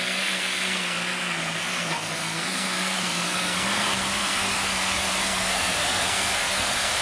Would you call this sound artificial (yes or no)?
yes